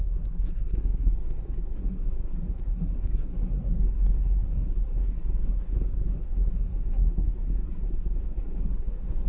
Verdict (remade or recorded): remade